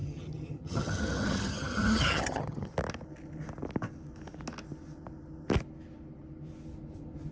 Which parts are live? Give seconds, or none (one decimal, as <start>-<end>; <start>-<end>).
2.7-7.3